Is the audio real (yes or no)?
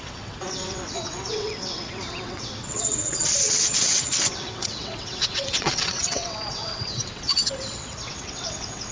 no